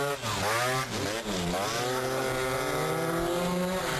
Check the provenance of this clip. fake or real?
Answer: fake